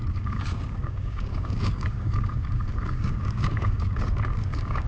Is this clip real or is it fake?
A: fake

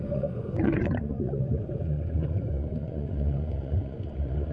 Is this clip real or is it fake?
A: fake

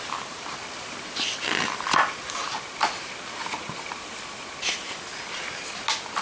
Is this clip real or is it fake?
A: real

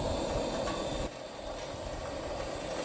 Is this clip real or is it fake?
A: real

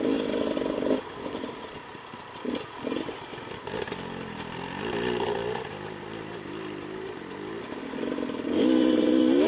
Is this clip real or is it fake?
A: fake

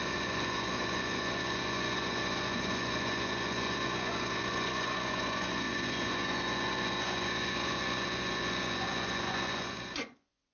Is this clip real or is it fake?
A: fake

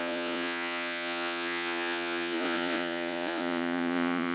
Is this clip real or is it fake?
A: fake